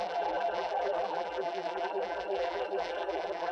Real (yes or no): no